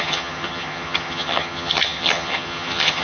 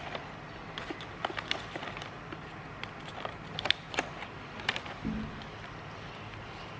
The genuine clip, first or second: second